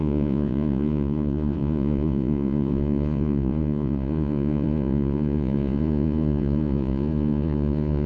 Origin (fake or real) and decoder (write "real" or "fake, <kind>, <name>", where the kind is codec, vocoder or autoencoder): fake, vocoder, Vocos